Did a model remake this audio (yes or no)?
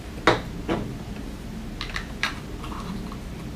no